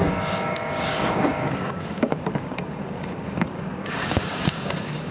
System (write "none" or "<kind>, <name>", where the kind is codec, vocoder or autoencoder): codec, DAC